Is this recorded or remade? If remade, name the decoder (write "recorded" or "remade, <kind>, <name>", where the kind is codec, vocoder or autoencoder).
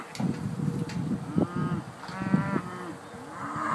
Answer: recorded